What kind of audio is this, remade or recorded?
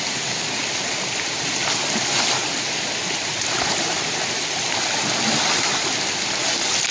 recorded